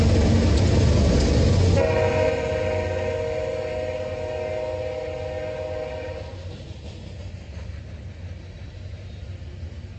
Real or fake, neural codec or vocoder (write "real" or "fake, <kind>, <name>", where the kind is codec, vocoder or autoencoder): real